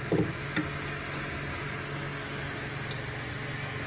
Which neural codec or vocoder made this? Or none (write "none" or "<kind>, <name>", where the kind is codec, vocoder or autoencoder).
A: none